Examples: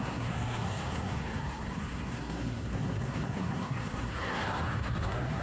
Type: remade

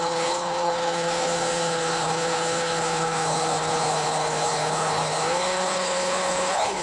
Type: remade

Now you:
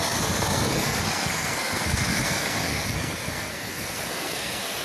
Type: remade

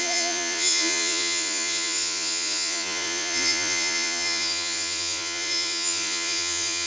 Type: remade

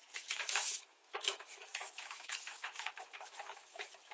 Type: remade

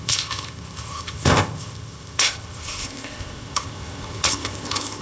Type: remade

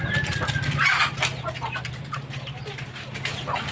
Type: recorded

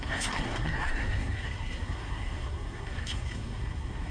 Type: remade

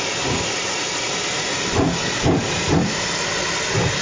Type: recorded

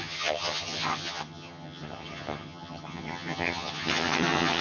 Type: remade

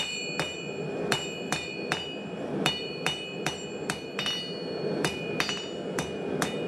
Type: remade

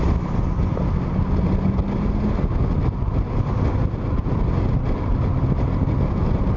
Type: recorded